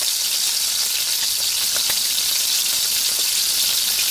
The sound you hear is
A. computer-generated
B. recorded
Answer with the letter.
B